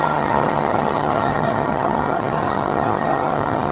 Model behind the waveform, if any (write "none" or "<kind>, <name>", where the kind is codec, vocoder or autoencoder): vocoder, HiFi-GAN